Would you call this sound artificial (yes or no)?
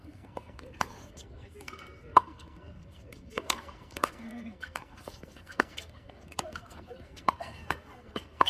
yes